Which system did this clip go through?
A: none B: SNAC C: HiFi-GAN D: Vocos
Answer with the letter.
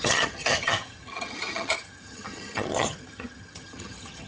C